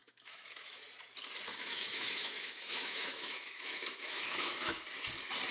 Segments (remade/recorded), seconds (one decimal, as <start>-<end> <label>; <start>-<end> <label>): 0.0-0.8 remade; 0.8-1.5 recorded; 1.5-4.8 remade; 4.8-5.5 recorded